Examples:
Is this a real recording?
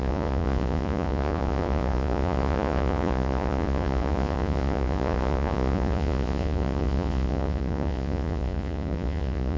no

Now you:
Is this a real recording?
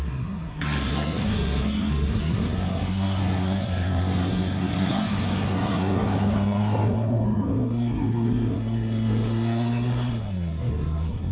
no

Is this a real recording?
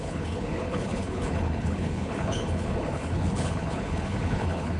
no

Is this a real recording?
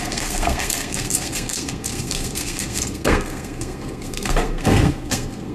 no